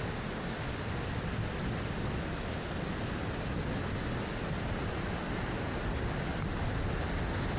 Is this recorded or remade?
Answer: recorded